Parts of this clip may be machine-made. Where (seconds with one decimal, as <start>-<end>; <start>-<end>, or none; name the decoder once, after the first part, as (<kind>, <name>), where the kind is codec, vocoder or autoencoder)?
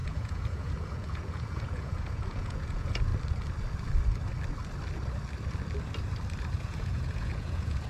0.0-3.1 (vocoder, Vocos); 6.6-7.9